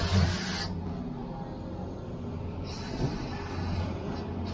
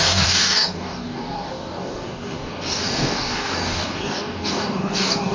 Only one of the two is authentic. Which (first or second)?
first